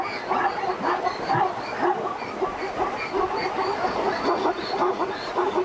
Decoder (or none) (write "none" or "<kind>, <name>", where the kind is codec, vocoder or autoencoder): none